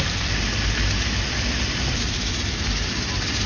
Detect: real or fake real